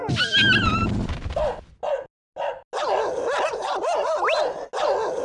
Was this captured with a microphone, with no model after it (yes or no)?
yes